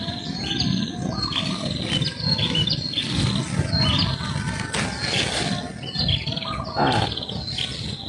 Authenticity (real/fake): real